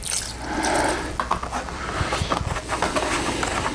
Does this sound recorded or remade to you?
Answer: recorded